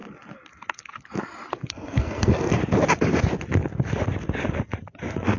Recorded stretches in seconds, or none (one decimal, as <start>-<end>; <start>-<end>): 0.0-1.7; 2.6-5.4